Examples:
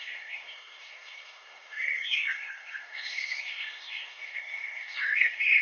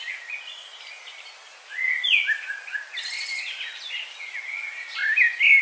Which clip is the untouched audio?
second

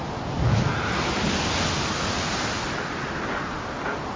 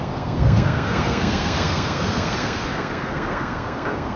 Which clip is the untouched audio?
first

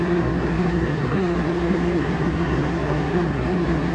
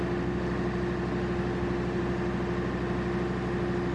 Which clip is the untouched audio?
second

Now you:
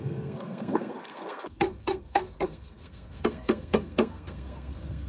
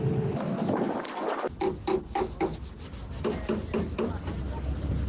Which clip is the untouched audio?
second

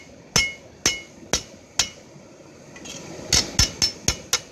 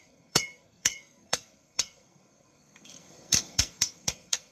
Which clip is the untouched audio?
first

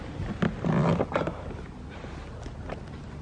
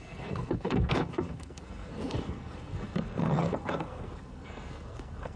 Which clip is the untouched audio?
first